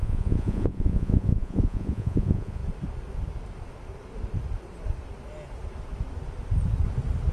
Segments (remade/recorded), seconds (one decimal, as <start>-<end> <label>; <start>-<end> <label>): 0.0-2.6 remade; 2.6-7.3 recorded